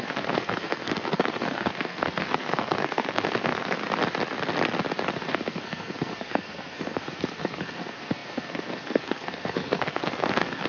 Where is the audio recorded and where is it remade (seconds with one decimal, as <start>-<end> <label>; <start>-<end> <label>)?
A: 0.0-3.8 remade; 3.8-5.1 recorded; 5.1-10.7 remade